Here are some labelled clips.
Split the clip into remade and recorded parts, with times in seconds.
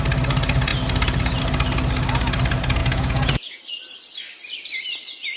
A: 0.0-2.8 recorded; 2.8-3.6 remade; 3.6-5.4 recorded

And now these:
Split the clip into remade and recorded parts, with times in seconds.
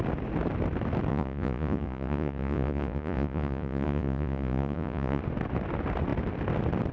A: 0.0-1.1 recorded; 1.1-5.2 remade; 5.2-6.9 recorded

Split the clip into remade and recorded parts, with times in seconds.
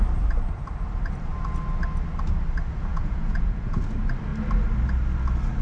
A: 0.0-2.9 recorded; 2.9-3.8 remade; 3.8-5.6 recorded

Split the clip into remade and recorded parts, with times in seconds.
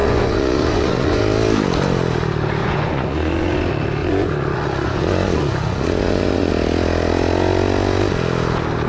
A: 0.0-1.2 remade; 1.2-2.6 recorded; 2.6-3.6 remade; 3.6-4.0 recorded; 4.0-6.5 remade; 6.5-8.9 recorded